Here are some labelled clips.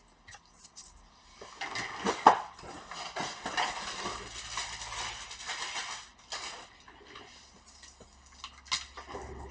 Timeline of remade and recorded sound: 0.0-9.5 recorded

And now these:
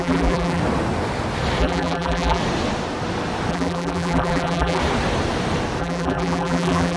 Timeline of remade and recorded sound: 0.0-0.6 remade; 0.6-1.6 recorded; 1.6-2.4 remade; 2.4-3.5 recorded; 3.5-4.8 remade; 4.8-5.8 recorded; 5.8-7.0 remade

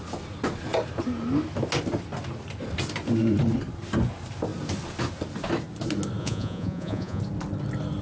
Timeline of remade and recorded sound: 0.0-6.2 recorded; 6.2-7.2 remade; 7.2-8.0 recorded

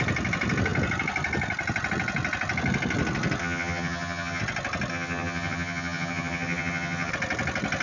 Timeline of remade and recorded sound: 0.0-3.4 recorded; 3.4-4.4 remade; 4.4-4.9 recorded; 4.9-7.1 remade; 7.1-7.8 recorded